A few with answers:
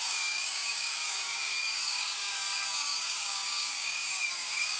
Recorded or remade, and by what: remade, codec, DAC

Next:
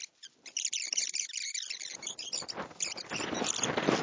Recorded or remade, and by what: recorded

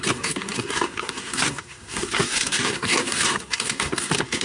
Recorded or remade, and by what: remade, codec, SNAC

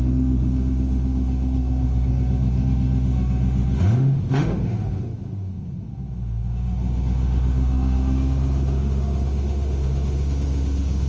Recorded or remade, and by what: remade, autoencoder, DAC-VAE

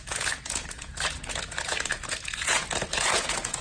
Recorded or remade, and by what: remade, vocoder, Vocos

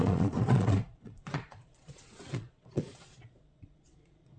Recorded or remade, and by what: remade, vocoder, Vocos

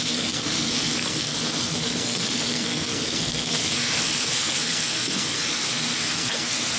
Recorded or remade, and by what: remade, codec, SNAC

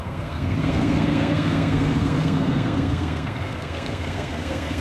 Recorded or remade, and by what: remade, codec, SNAC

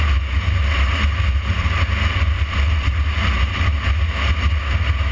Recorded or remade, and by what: recorded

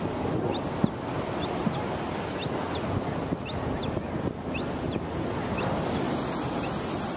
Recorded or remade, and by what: recorded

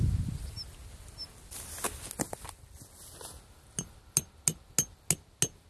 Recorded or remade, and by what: recorded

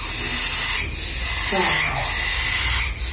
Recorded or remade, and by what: recorded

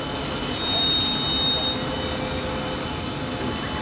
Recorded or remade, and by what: recorded